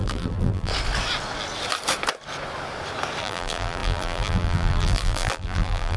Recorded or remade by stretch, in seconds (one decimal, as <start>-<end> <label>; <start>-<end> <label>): 0.0-0.7 remade; 0.7-3.2 recorded; 3.2-6.0 remade